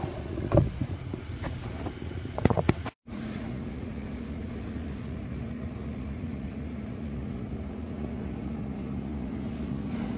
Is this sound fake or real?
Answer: fake